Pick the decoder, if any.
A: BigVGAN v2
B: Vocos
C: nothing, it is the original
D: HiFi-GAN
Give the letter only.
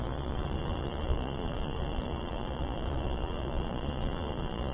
B